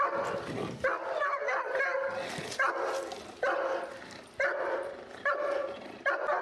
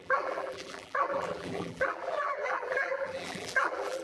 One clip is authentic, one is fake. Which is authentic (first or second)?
first